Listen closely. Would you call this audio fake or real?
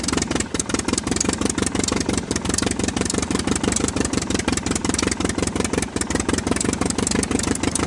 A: real